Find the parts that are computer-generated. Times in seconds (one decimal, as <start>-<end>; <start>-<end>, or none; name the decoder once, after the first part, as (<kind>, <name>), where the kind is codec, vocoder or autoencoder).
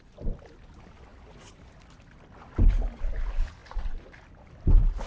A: none